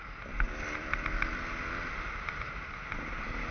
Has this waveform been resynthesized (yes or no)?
no